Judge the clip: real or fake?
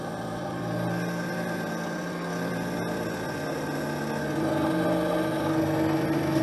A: real